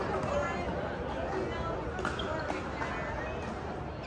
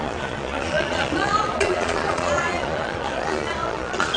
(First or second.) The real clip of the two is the first